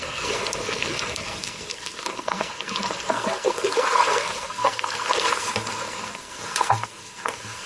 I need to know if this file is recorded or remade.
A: remade